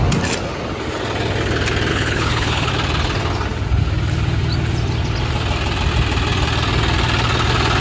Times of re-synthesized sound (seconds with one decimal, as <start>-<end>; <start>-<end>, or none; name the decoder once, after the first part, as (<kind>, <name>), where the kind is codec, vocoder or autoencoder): 1.9-2.7 (codec, HILCodec)